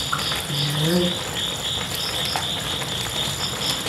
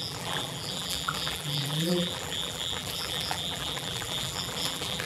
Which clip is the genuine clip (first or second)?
first